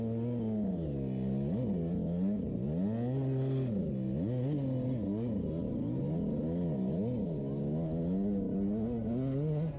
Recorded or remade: recorded